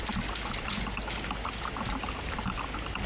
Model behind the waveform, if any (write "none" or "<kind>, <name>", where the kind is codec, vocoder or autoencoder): none